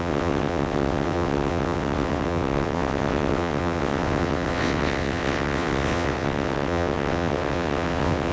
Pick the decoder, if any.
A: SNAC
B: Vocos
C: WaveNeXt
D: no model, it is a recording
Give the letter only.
C